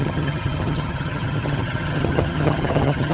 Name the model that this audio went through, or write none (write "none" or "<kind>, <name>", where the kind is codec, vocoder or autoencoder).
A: vocoder, HiFi-GAN